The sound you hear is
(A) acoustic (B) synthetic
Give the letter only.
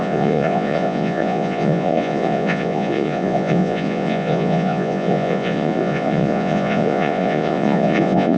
B